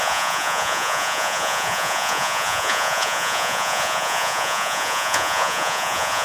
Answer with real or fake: fake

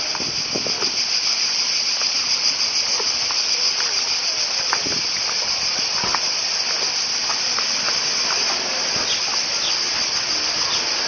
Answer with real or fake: real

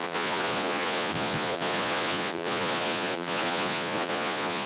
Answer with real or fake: fake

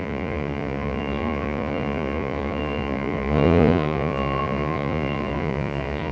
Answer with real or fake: fake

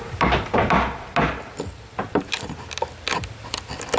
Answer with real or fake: real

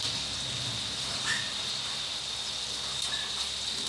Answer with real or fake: real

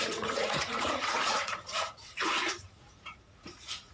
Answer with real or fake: fake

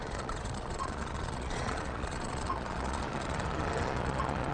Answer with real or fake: fake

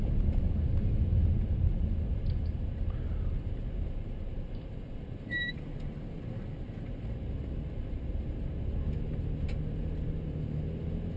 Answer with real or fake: real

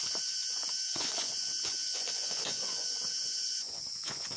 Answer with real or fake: fake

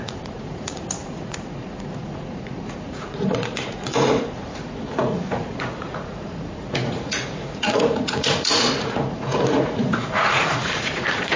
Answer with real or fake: fake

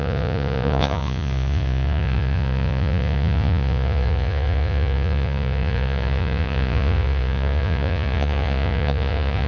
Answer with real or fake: fake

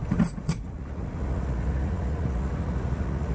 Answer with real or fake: fake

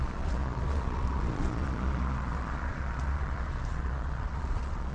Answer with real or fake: fake